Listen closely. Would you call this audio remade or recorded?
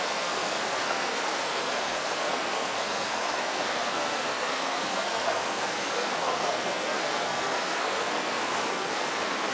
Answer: remade